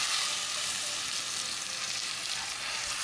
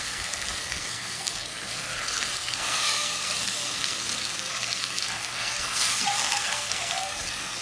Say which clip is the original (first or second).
first